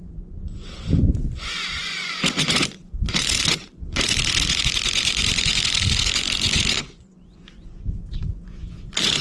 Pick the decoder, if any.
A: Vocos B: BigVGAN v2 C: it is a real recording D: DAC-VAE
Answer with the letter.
A